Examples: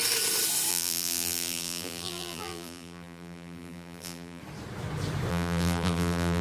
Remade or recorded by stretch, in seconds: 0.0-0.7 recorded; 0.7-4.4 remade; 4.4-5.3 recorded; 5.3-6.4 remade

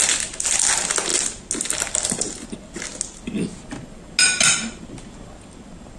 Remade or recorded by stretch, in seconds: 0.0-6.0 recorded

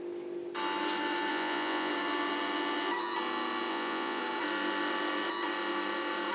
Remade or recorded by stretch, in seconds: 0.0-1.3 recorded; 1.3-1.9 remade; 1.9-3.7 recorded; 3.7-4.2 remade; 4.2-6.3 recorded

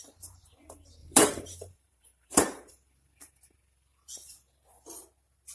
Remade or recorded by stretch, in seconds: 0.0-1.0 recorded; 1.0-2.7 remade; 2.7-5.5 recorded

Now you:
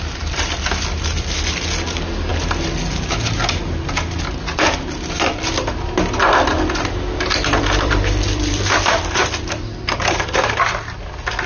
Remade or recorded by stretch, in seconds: 0.0-6.2 recorded; 6.2-10.4 remade; 10.4-11.5 recorded

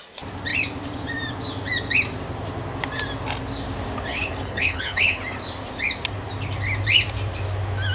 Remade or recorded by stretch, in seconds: 0.0-4.1 recorded; 4.1-5.2 remade; 5.2-7.9 recorded